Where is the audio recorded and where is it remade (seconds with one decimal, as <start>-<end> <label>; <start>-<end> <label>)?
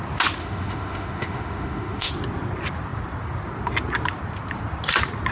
0.0-0.4 recorded; 0.4-2.1 remade; 2.1-5.3 recorded